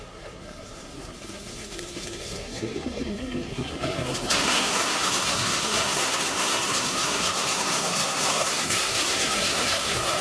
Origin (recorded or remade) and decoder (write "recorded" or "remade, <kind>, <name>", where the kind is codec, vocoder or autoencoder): remade, codec, SNAC